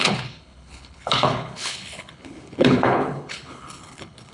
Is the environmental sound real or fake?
fake